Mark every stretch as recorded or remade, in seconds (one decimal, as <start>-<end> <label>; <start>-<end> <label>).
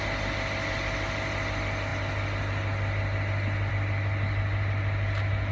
0.0-5.5 recorded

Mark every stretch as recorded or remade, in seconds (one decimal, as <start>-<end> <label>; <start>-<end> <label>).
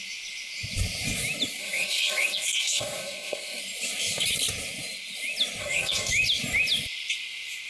0.0-1.6 recorded; 1.6-3.6 remade; 3.6-5.6 recorded; 5.6-6.1 remade; 6.1-7.7 recorded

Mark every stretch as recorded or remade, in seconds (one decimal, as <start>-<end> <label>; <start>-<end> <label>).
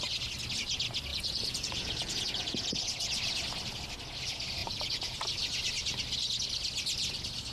0.0-1.1 recorded; 1.1-2.8 remade; 2.8-4.6 recorded; 4.6-5.2 remade; 5.2-7.5 recorded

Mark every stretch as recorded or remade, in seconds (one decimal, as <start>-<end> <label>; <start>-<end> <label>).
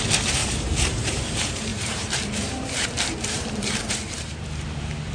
0.0-5.1 remade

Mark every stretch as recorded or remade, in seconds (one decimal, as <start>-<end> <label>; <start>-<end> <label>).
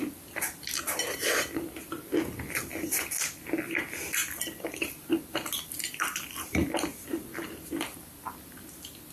0.0-4.2 recorded; 4.2-7.6 remade; 7.6-9.1 recorded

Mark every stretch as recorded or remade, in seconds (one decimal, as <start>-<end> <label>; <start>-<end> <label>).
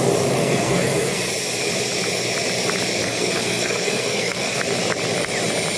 0.0-0.4 recorded; 0.4-1.3 remade; 1.3-3.0 recorded; 3.0-4.6 remade; 4.6-5.8 recorded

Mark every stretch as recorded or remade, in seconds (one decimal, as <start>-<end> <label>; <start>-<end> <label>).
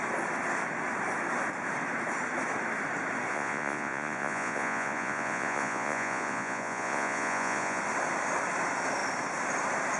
0.0-3.3 recorded; 3.3-7.8 remade; 7.8-10.0 recorded